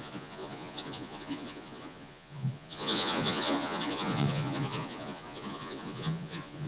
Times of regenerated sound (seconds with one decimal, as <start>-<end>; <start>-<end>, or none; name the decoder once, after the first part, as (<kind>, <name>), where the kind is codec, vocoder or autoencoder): 0.0-6.7 (vocoder, Vocos)